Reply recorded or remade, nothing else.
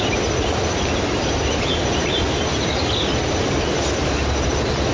recorded